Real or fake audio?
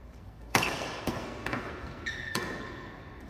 fake